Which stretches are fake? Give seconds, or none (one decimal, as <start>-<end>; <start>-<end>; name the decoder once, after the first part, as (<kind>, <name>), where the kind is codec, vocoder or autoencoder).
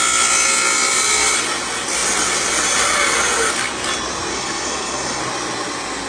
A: 4.3-5.2 (codec, SNAC)